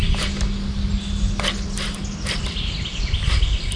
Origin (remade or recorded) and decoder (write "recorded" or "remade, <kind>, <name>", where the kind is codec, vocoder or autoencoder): recorded